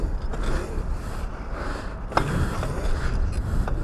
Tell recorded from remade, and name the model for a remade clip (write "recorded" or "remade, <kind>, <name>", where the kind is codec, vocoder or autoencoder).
recorded